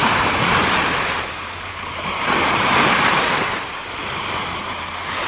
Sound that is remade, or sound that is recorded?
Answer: remade